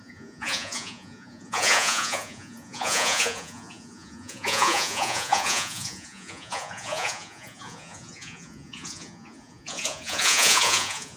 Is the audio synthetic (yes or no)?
yes